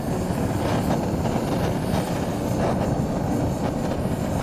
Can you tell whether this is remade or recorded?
recorded